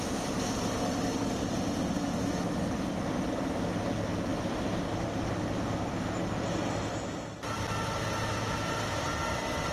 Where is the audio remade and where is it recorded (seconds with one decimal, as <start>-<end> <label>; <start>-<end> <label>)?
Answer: 0.0-9.7 recorded